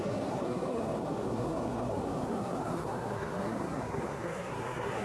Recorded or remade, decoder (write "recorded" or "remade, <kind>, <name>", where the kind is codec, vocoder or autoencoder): remade, codec, SNAC